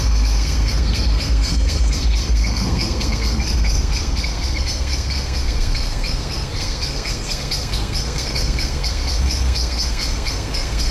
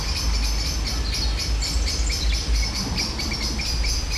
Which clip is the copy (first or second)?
first